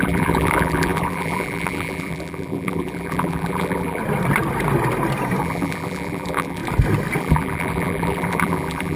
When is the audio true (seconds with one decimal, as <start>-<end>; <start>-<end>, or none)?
4.0-5.4; 6.6-7.2